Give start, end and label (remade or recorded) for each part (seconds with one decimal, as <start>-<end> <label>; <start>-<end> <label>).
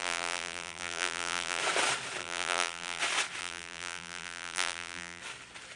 0.0-1.6 remade; 1.6-2.2 recorded; 2.2-3.0 remade; 3.0-3.4 recorded; 3.4-5.2 remade; 5.2-5.8 recorded